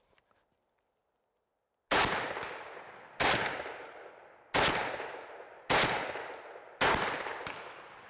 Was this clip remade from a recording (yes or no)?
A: no